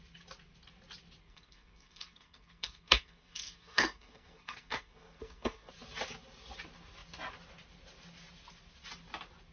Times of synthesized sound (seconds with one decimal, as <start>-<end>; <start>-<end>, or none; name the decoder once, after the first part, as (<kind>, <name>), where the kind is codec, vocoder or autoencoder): 1.2-5.7 (codec, SNAC)